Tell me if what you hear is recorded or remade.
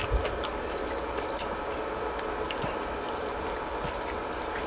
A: recorded